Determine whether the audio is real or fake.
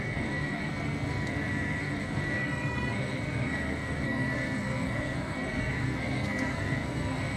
fake